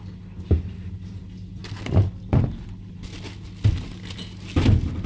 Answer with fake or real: real